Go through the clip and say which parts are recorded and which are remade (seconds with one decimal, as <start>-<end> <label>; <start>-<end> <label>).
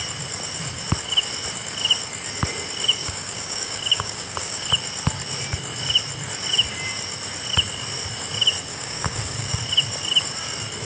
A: 0.0-3.0 recorded; 3.0-4.7 remade; 4.7-8.7 recorded; 8.7-9.6 remade; 9.6-10.8 recorded